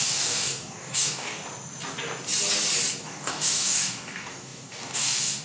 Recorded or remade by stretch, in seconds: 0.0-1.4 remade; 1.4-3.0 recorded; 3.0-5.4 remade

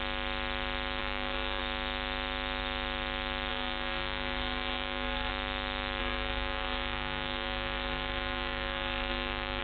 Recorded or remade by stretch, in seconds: 0.0-1.0 recorded; 1.0-1.6 remade; 1.6-3.5 recorded; 3.5-5.3 remade; 5.3-6.0 recorded; 6.0-9.6 remade

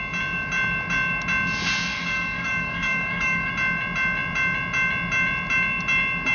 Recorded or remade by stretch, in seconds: 0.0-1.9 recorded; 1.9-3.5 remade; 3.5-6.3 recorded

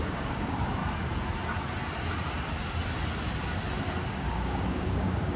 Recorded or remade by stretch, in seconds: 0.0-0.8 remade; 0.8-4.0 recorded; 4.0-5.4 remade

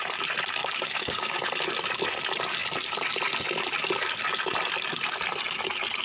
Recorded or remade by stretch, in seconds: 0.0-0.6 recorded; 0.6-1.4 remade; 1.4-6.0 recorded

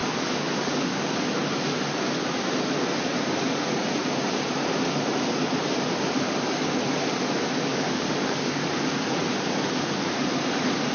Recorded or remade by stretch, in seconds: 0.0-1.0 remade; 1.0-7.7 recorded; 7.7-8.7 remade; 8.7-10.9 recorded

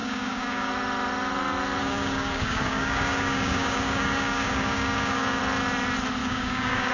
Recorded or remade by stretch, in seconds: 0.0-0.7 remade; 0.7-1.8 recorded; 1.8-5.4 remade; 5.4-6.2 recorded; 6.2-6.9 remade